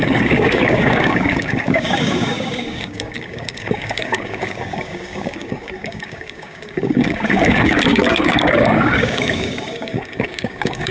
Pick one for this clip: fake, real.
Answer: fake